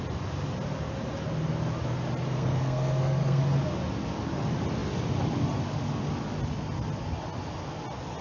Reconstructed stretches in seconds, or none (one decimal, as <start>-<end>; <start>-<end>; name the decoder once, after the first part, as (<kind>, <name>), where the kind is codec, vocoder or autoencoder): 2.3-3.4 (codec, SNAC)